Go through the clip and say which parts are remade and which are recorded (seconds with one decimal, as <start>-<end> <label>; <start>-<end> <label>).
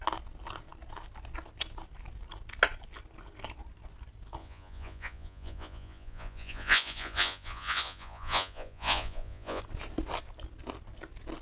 0.0-4.4 recorded; 4.4-9.6 remade; 9.6-11.4 recorded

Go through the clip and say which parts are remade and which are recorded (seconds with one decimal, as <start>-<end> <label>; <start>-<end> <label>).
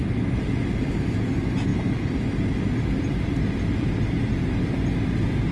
0.0-5.5 recorded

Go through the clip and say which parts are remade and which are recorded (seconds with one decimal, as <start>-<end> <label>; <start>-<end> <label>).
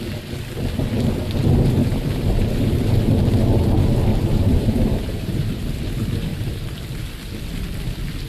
0.0-1.8 recorded; 1.8-2.8 remade; 2.8-4.1 recorded; 4.1-5.6 remade; 5.6-6.3 recorded; 6.3-7.0 remade; 7.0-8.3 recorded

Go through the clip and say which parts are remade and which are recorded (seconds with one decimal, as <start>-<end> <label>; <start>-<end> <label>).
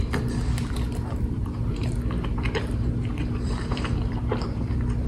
0.0-1.4 remade; 1.4-3.1 recorded; 3.1-5.1 remade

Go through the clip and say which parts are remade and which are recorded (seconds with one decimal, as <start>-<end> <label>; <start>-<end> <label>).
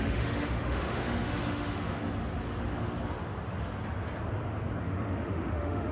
0.0-2.0 remade; 2.0-4.8 recorded; 4.8-5.9 remade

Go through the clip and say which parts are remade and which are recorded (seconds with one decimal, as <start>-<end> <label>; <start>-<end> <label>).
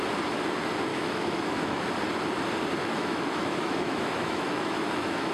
0.0-0.9 recorded; 0.9-1.9 remade; 1.9-2.8 recorded; 2.8-5.3 remade